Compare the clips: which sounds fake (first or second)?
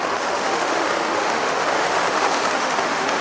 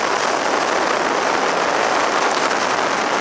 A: first